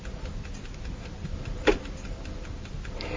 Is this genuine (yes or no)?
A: yes